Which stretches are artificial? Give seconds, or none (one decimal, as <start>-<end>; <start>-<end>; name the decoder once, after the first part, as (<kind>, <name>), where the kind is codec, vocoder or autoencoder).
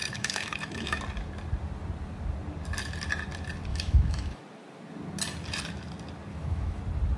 0.0-1.0 (autoencoder, DAC-VAE); 3.7-4.4; 6.3-6.8